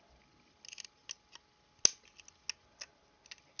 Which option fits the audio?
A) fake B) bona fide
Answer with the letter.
B